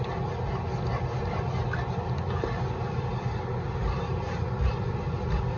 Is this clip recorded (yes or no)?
yes